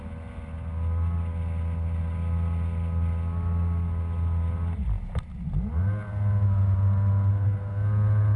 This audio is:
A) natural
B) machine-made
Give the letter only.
A